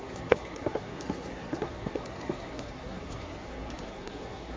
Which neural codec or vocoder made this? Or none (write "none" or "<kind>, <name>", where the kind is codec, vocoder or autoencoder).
codec, SNAC